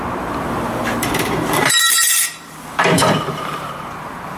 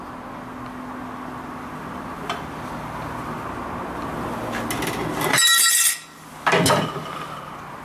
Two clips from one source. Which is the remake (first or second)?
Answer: first